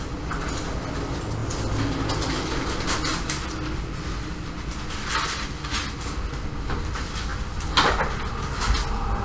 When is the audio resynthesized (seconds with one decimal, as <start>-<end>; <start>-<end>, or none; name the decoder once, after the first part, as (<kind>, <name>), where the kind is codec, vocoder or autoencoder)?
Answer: none